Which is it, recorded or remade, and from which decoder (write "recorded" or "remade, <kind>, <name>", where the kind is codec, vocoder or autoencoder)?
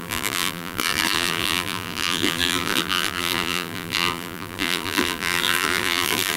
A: remade, vocoder, BigVGAN v2